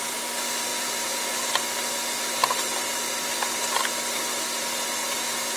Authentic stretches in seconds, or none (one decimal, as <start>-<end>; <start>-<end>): 0.0-0.7; 1.3-5.0